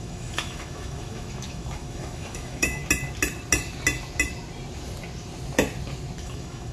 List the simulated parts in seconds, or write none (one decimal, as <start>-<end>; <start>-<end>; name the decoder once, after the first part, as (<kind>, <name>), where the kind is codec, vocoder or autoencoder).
0.0-2.8 (autoencoder, DAC-VAE); 6.2-6.7

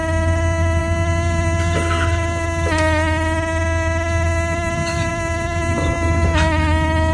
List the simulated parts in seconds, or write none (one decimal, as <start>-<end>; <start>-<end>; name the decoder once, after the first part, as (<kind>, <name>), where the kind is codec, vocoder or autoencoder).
none

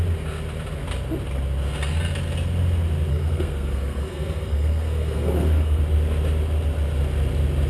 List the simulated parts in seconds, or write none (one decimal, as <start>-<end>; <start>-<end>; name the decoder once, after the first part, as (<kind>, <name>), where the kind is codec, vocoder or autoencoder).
3.1-5.8 (codec, SNAC)

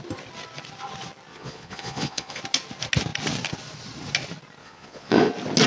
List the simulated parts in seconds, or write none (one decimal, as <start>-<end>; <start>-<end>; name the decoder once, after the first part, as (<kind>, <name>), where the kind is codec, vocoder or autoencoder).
1.3-2.4 (vocoder, Vocos); 4.6-5.3

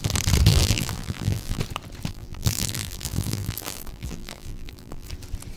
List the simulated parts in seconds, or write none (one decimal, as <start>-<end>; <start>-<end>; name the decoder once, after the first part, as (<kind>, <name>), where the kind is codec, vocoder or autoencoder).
0.5-1.6 (vocoder, BigVGAN v2); 2.1-5.1

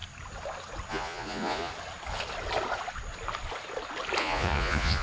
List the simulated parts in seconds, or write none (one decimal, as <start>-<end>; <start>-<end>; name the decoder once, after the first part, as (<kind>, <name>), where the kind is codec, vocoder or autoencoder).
0.9-1.7 (vocoder, Vocos); 4.2-5.0